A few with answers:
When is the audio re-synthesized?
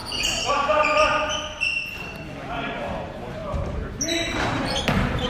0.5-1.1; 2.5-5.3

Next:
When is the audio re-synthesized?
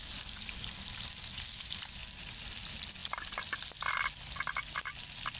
none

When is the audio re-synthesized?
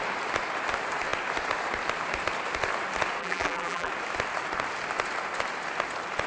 3.2-3.9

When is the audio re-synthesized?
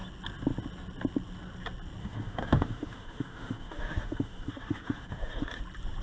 2.0-5.6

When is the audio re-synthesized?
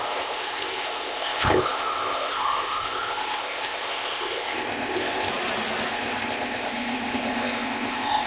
0.0-5.3; 5.9-8.3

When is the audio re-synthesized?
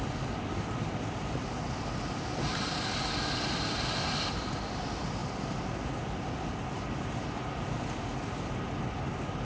none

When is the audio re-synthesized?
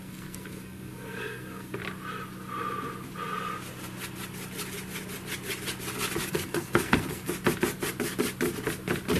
0.0-1.8; 6.3-7.3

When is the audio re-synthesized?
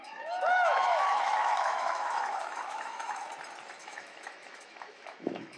0.0-3.2; 3.8-5.6